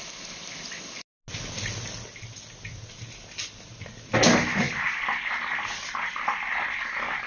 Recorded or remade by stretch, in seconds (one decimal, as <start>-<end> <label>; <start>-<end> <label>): 0.0-7.3 recorded